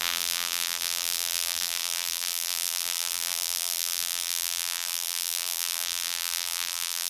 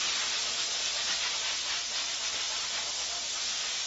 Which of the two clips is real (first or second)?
second